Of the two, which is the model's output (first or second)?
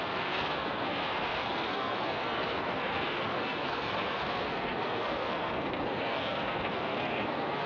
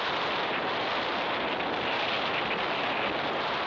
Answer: first